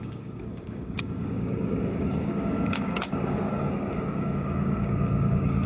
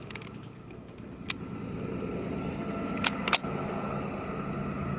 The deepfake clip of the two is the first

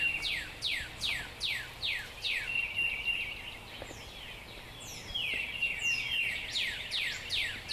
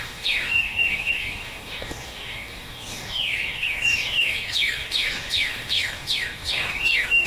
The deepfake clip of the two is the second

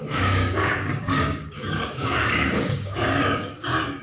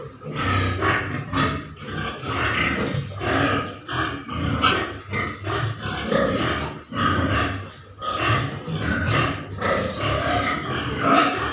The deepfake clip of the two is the first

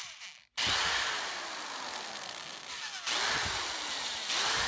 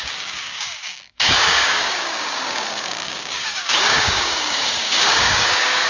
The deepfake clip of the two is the second